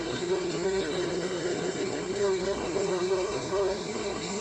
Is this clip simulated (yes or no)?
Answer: yes